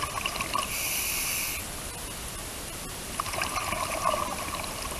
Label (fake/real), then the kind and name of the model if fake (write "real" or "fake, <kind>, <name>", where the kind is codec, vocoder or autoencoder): real